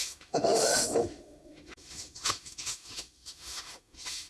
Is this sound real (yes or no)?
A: no